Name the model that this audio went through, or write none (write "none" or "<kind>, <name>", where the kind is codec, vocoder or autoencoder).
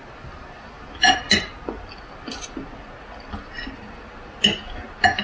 none